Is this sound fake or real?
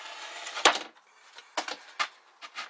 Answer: real